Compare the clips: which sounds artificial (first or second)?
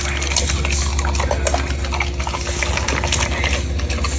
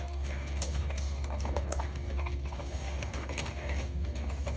second